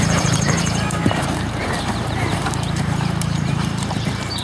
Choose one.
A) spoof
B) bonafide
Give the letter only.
A